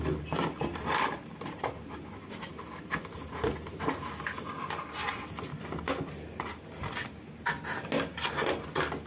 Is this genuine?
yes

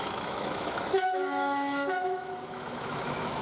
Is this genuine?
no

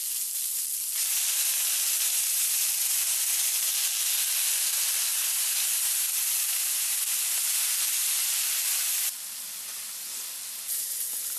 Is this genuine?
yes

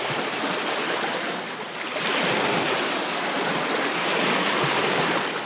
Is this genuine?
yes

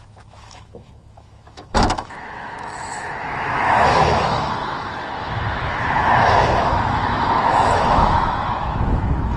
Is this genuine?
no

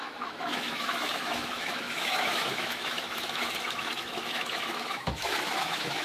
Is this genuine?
no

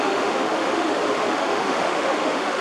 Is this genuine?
no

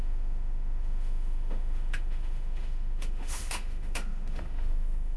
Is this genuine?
no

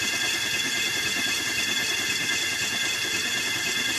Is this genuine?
yes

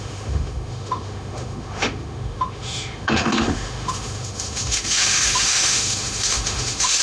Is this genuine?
no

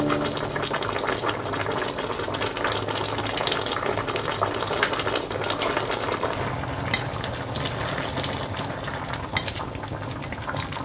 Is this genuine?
yes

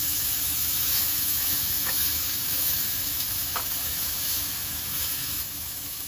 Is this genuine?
no